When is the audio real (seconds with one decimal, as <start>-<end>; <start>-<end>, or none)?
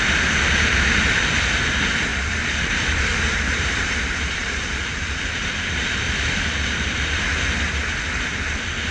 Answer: 0.0-2.1; 7.2-8.9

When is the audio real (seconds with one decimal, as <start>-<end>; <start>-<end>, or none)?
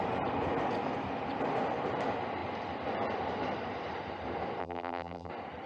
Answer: 0.0-4.6; 5.3-5.7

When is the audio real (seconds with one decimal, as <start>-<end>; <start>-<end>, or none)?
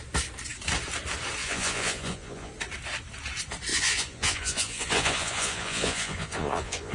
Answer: 0.0-1.4; 2.5-3.7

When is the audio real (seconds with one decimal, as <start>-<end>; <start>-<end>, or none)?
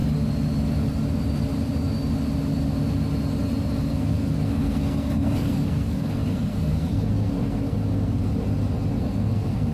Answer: 0.0-3.9; 8.3-8.9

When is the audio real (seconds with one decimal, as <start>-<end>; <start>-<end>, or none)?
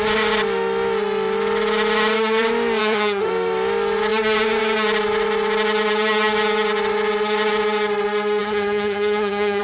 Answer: 0.0-2.8; 3.3-8.4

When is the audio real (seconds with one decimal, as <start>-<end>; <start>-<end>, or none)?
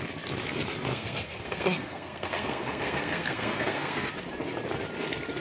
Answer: 0.0-0.9; 4.1-5.4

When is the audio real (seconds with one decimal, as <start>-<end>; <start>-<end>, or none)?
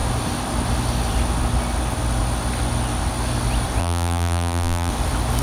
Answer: 0.0-3.8; 4.9-5.4